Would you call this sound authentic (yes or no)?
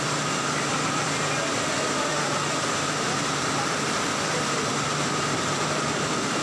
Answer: no